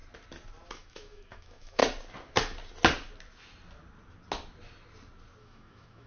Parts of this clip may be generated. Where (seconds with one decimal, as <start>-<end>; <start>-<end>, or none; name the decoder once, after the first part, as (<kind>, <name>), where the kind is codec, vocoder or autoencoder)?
0.7-1.8 (autoencoder, DAC-VAE); 5.4-6.1